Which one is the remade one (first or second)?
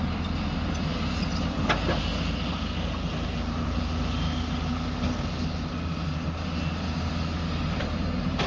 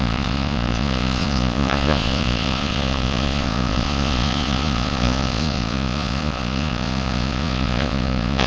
second